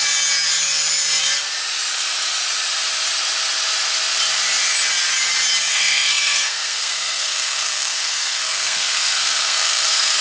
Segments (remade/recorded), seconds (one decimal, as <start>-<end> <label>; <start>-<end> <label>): 0.0-5.7 recorded; 5.7-10.2 remade